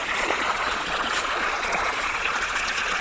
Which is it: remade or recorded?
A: remade